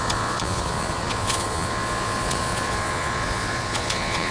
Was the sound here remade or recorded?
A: remade